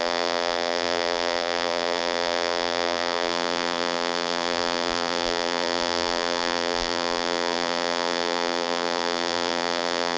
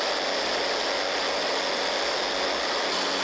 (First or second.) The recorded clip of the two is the second